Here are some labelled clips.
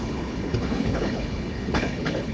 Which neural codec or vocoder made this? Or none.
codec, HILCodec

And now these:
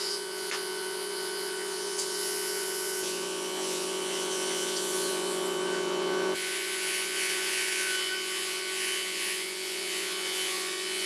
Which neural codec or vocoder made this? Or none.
vocoder, Vocos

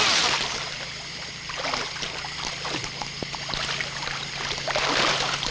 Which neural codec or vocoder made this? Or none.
none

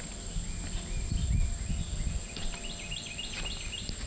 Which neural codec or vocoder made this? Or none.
none